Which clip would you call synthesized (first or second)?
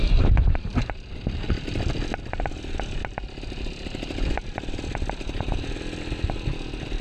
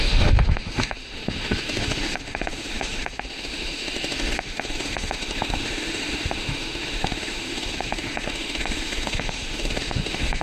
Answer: second